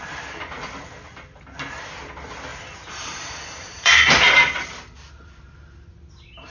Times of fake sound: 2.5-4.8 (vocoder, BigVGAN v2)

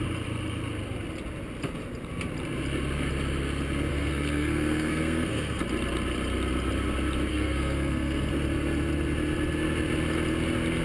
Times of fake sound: 3.9-5.6 (codec, SNAC); 7.3-8.3

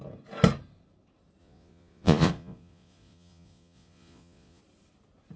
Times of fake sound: 1.4-4.6 (vocoder, Vocos)

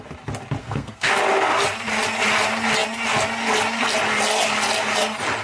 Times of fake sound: 0.6-1.1 (codec, SNAC)

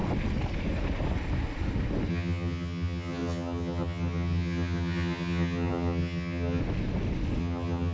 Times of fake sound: 2.1-6.6 (vocoder, HiFi-GAN); 7.4-7.9

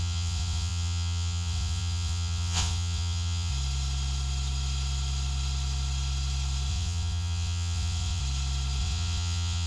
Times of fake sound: 0.0-3.5 (vocoder, WaveNeXt); 6.7-8.2; 8.8-9.7